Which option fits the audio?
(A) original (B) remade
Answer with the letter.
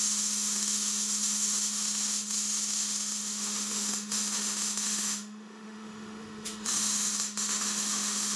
B